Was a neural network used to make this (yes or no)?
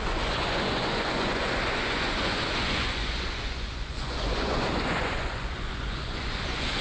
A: yes